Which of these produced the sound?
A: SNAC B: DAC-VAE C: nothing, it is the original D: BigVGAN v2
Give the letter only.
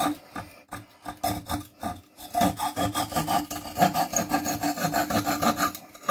C